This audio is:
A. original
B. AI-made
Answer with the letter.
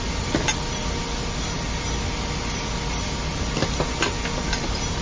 A